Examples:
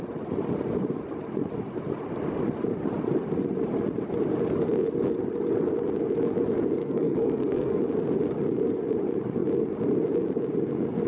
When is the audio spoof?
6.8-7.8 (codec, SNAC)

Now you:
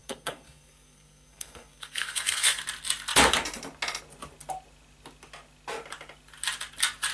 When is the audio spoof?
0.0-2.6 (codec, SNAC)